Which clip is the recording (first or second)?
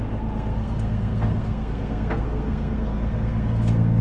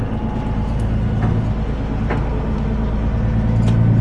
second